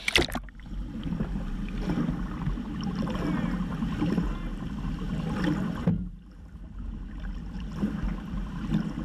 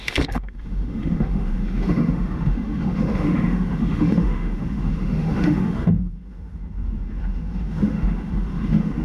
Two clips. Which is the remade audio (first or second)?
second